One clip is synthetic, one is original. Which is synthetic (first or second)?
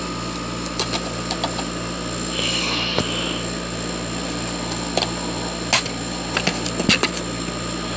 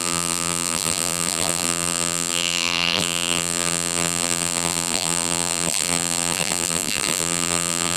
second